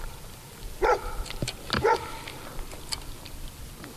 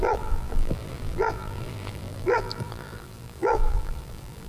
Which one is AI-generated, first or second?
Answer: second